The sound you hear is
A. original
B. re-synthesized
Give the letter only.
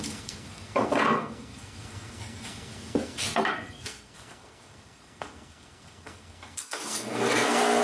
B